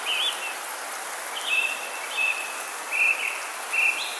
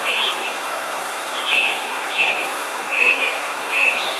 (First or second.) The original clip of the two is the first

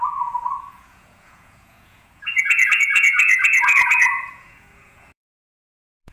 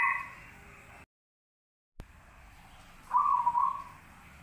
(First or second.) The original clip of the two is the second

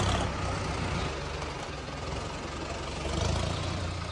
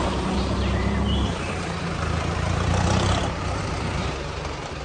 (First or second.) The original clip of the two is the first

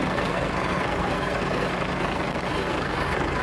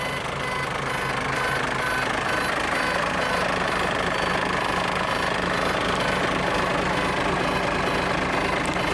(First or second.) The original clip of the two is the second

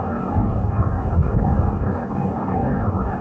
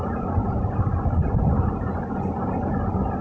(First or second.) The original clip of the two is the second